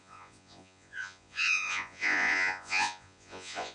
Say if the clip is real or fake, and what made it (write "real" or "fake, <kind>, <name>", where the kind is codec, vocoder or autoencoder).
fake, vocoder, Vocos